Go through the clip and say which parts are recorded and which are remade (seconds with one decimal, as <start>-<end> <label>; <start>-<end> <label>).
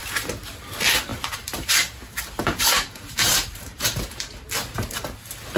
0.0-1.1 recorded; 1.1-4.5 remade; 4.5-5.6 recorded